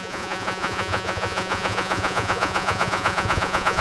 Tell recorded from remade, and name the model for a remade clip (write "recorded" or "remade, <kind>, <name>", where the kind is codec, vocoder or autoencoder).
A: remade, vocoder, Vocos